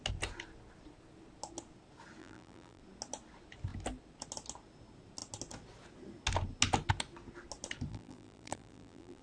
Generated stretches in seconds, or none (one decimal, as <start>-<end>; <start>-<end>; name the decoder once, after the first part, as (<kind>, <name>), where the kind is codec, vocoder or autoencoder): 2.2-2.8 (vocoder, BigVGAN v2); 7.9-9.2